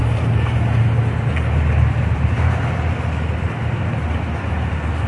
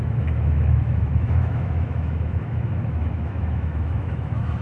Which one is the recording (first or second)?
first